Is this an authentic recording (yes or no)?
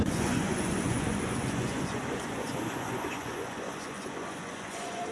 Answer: no